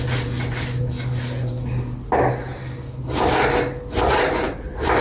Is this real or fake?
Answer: real